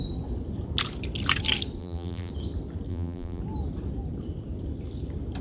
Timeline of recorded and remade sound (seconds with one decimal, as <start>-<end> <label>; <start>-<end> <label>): 0.0-1.8 recorded; 1.8-2.3 remade; 2.3-2.9 recorded; 2.9-3.4 remade; 3.4-5.4 recorded